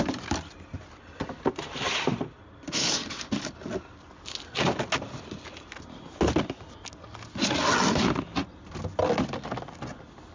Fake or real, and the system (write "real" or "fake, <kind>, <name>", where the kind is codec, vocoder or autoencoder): real